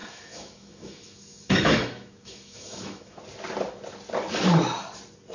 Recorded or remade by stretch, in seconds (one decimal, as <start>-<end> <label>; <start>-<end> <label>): 0.0-3.2 remade; 3.2-5.3 recorded